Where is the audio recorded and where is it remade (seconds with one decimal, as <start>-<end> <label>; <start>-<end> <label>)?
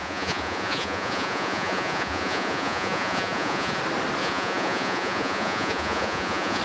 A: 0.0-3.8 remade; 3.8-4.2 recorded; 4.2-6.6 remade